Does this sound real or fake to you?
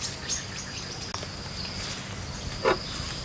real